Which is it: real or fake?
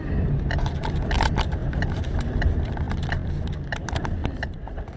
fake